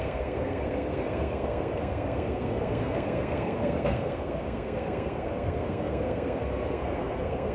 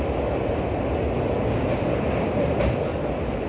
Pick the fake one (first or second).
first